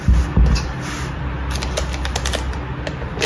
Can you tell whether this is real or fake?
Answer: real